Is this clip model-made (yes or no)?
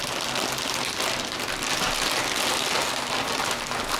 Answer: no